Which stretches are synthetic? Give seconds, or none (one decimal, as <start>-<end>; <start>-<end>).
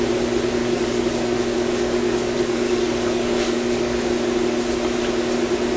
0.6-4.1